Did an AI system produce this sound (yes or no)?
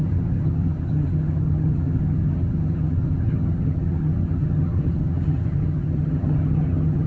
yes